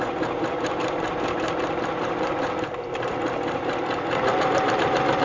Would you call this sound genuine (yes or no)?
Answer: no